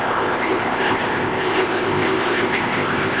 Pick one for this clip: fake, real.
fake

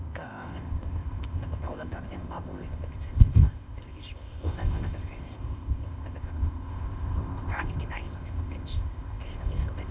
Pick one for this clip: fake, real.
fake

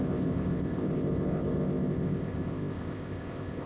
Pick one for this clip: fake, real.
fake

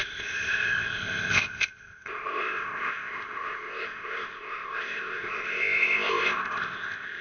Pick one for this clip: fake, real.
fake